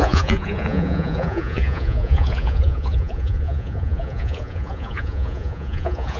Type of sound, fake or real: fake